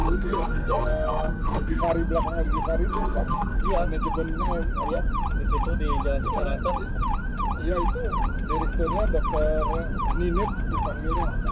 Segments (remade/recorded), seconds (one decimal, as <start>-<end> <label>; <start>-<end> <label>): 0.0-1.8 remade; 1.8-2.9 recorded; 2.9-3.6 remade; 3.6-11.5 recorded